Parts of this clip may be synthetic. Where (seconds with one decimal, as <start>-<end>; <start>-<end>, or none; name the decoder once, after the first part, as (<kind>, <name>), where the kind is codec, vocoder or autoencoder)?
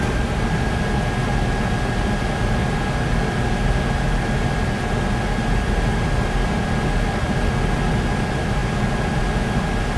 none